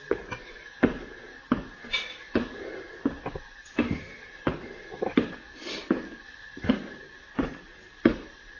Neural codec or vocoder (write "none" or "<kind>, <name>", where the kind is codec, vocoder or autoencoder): none